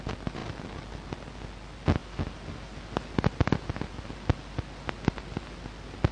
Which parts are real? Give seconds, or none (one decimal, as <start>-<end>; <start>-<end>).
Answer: 0.0-6.1